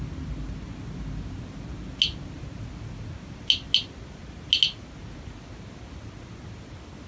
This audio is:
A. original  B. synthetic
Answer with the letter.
A